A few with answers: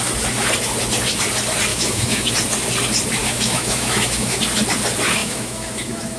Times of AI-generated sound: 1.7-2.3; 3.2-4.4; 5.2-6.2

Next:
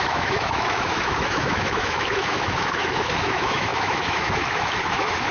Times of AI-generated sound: 0.0-5.3